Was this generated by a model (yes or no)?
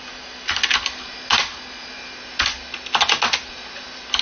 no